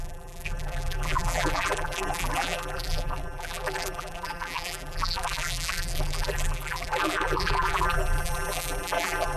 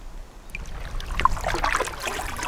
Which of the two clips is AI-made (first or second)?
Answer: first